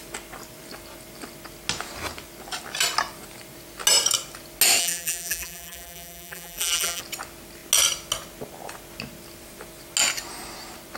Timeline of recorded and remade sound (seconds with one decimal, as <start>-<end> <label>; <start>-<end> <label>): 0.0-4.8 recorded; 4.8-7.0 remade; 7.0-11.0 recorded